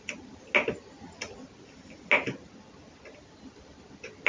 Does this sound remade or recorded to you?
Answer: recorded